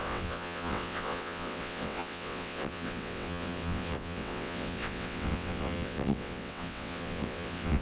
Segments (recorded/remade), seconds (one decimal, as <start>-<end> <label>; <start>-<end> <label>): 0.0-7.8 remade